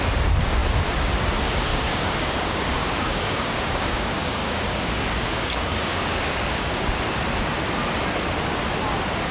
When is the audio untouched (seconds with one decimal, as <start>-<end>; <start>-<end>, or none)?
0.0-1.7; 7.0-9.3

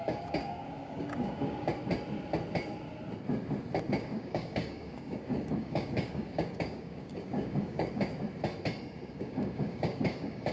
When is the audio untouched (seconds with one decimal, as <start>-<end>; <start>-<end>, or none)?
1.7-3.9; 8.1-9.1

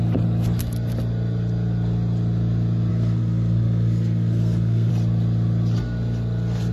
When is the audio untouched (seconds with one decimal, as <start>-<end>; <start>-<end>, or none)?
0.0-2.9; 4.9-6.7

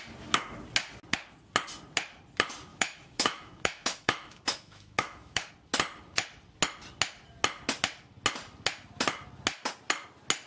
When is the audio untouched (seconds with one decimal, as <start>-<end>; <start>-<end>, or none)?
0.0-2.7; 5.5-10.5